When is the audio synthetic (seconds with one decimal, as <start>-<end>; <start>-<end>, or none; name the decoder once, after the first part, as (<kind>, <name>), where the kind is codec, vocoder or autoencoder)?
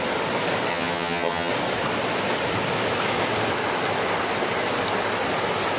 0.7-1.5 (vocoder, HiFi-GAN)